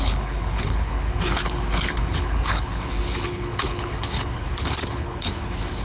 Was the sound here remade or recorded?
remade